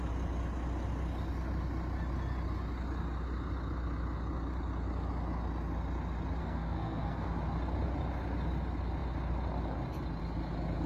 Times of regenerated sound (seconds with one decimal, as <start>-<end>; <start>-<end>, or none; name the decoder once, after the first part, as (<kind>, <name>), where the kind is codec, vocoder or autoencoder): 6.4-7.3 (codec, SNAC)